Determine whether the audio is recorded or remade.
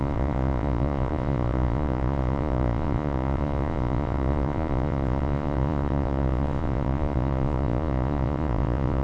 remade